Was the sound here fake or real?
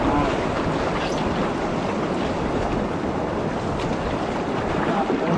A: real